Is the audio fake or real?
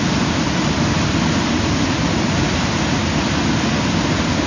real